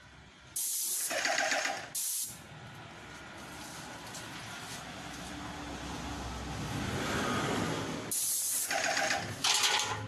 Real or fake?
real